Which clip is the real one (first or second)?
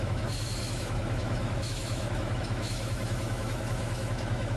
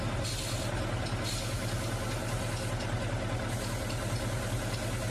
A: second